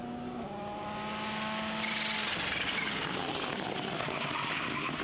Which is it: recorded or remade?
recorded